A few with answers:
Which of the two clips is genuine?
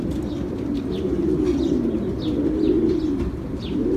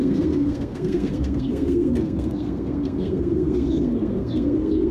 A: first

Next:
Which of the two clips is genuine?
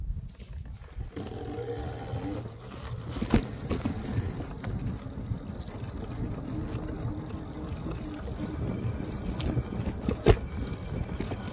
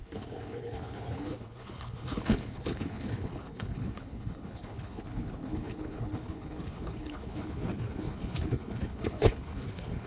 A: first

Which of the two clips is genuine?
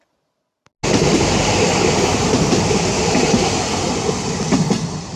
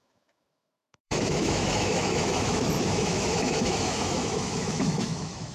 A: first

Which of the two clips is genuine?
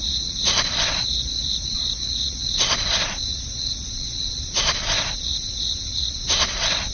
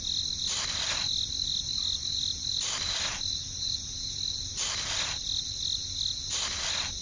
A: second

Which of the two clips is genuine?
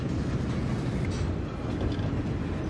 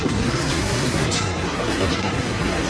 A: first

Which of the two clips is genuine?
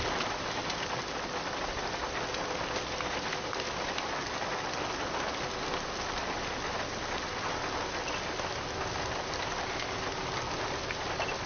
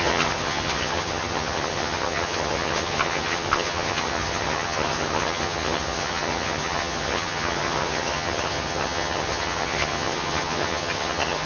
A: first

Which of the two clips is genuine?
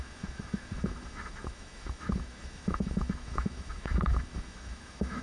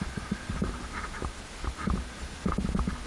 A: second